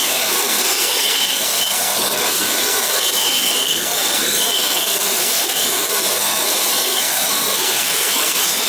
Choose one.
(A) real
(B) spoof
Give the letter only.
B